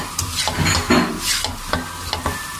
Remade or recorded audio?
recorded